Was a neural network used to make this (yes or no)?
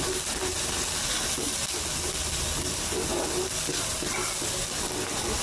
no